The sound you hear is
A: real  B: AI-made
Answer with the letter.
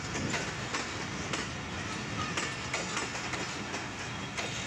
A